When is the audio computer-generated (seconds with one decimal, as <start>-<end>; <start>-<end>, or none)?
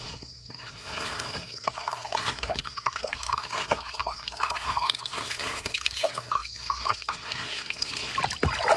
0.0-8.1